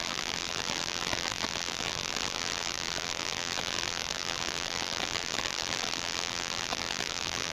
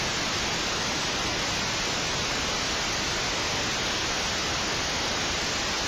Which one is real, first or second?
second